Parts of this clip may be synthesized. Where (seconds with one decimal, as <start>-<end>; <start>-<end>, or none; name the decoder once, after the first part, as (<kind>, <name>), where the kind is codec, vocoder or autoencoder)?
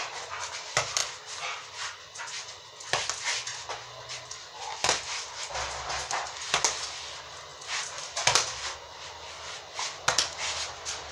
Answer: none